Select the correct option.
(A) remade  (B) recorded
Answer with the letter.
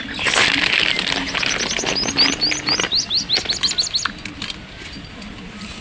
B